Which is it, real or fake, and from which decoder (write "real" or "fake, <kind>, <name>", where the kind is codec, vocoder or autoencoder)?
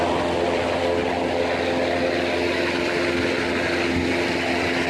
real